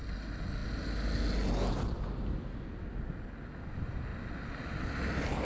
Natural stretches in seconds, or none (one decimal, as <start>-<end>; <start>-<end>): 0.0-5.4